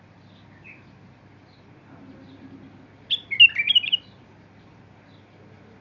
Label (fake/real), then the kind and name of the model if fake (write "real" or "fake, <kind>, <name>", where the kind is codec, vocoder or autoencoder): real